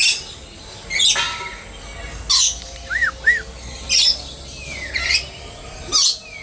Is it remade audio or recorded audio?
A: recorded